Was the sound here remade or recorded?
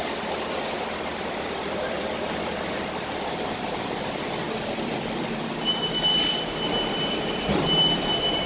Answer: remade